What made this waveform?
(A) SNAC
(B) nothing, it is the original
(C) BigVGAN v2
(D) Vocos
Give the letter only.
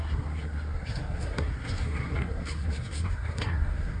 A